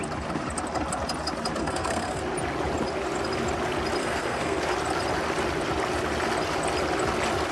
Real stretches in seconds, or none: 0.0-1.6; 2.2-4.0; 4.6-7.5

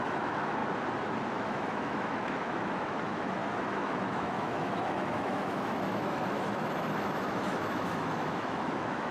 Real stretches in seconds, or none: 0.6-1.3

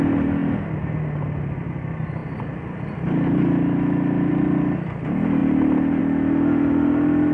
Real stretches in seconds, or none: 0.0-7.3

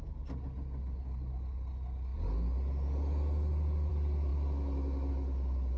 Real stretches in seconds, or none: 0.0-5.8

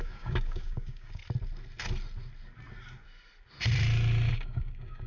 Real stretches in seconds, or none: 1.2-4.3